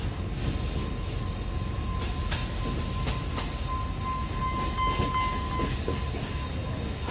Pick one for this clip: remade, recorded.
recorded